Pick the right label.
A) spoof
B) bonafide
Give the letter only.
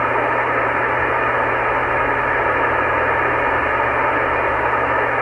B